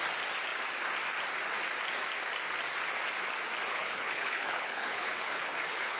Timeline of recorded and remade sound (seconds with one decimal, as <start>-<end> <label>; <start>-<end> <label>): 0.0-3.7 recorded; 3.7-6.0 remade